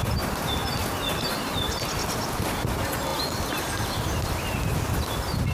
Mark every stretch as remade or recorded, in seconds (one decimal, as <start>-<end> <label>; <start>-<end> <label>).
0.0-0.6 remade; 0.6-2.5 recorded; 2.5-3.1 remade; 3.1-5.1 recorded; 5.1-5.5 remade